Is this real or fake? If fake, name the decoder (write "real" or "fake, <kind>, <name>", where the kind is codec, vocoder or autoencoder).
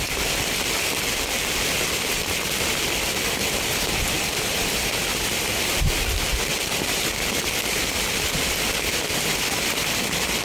real